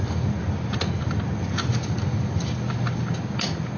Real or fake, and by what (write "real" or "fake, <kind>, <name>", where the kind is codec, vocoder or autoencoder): real